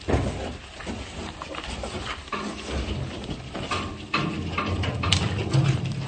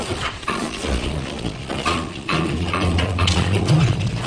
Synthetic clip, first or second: second